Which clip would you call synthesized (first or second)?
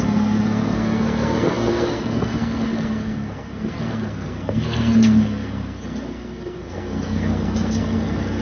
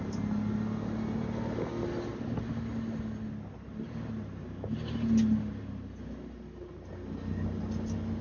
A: first